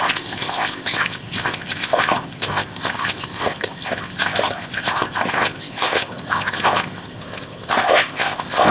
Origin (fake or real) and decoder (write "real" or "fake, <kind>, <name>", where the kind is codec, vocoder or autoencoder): fake, codec, ZipCodec